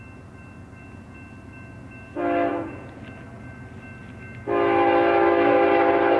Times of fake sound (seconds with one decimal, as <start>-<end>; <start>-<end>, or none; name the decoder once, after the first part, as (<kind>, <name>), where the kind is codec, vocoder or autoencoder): 2.5-3.0 (vocoder, Vocos)